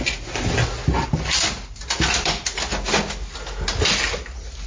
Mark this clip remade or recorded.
recorded